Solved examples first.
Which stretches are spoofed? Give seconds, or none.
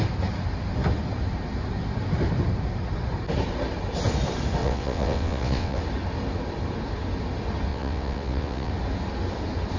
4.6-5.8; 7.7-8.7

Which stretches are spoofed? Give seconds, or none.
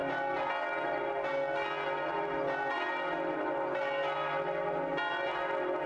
none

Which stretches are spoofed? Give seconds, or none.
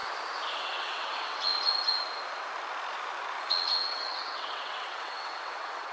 0.6-1.5; 3.5-5.9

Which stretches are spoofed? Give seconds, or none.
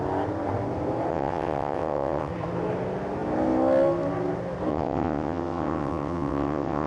1.1-2.3; 4.7-6.9